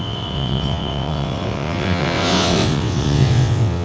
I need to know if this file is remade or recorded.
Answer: remade